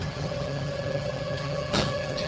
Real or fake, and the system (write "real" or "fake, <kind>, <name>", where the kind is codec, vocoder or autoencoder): fake, vocoder, HiFi-GAN